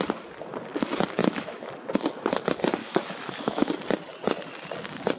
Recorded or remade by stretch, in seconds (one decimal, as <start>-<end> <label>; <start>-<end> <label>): 0.0-1.2 recorded; 1.2-1.7 remade; 1.7-2.8 recorded; 2.8-3.7 remade; 3.7-5.2 recorded